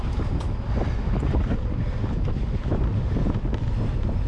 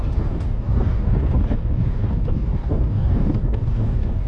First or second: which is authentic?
first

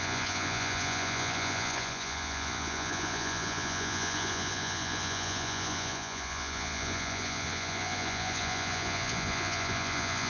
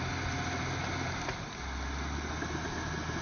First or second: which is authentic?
second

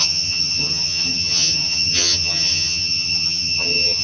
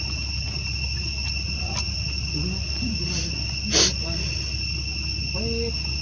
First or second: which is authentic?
second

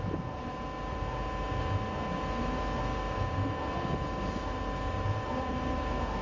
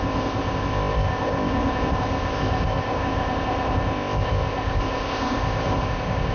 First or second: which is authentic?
first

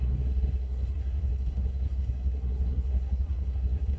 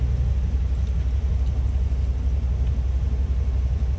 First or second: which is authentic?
second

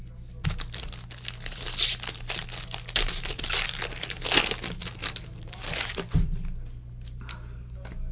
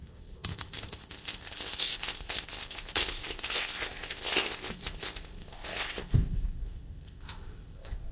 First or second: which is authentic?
first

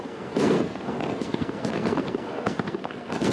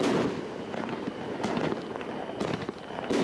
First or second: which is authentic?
second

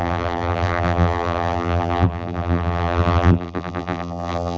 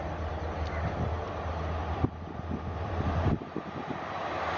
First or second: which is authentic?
second